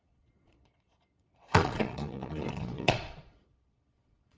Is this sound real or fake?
fake